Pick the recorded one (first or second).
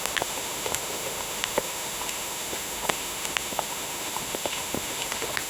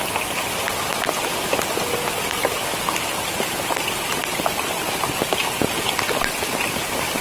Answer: second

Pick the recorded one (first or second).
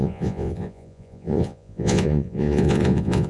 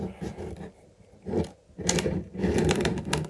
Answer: second